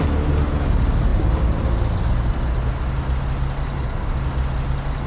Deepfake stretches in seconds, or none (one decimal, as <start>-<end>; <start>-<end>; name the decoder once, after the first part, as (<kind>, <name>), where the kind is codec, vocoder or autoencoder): none